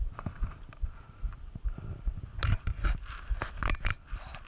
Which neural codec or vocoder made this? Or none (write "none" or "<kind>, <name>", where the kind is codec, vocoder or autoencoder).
none